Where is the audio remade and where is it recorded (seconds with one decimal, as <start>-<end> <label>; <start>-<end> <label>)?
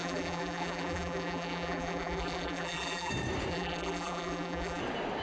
0.0-3.1 remade; 3.1-3.5 recorded; 3.5-4.8 remade; 4.8-5.2 recorded